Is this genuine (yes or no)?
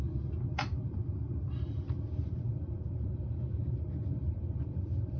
no